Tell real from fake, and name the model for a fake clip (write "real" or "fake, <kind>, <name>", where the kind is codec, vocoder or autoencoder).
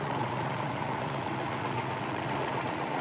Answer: fake, vocoder, Vocos